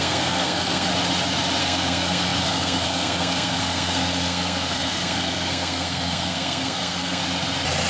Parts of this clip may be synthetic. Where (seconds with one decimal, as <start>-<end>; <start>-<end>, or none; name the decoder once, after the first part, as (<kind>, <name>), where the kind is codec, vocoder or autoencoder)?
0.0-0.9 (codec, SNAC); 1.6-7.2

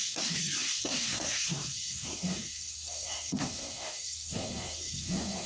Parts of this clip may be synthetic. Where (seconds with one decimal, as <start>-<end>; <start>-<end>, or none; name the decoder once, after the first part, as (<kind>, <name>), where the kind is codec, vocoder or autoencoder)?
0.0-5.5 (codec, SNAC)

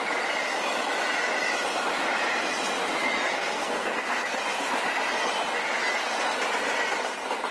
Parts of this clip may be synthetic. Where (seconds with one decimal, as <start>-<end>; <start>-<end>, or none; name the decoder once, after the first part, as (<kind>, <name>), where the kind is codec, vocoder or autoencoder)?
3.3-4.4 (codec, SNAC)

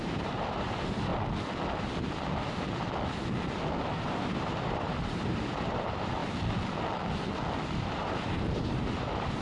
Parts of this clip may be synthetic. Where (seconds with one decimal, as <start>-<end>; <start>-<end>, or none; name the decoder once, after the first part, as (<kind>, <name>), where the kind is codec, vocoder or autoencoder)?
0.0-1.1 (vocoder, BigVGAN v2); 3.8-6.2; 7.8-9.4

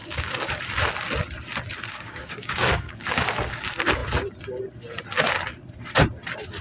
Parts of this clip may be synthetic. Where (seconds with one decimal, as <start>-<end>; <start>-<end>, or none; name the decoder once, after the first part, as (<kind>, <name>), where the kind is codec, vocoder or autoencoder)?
0.0-0.6 (codec, DAC); 1.9-3.6

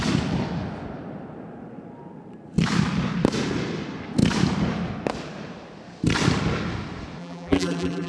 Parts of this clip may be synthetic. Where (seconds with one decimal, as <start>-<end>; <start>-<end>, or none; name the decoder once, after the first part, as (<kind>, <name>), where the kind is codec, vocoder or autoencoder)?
7.2-8.1 (vocoder, BigVGAN v2)